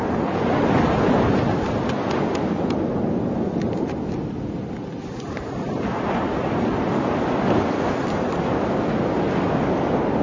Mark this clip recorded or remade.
recorded